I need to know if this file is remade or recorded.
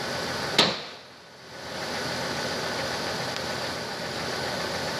recorded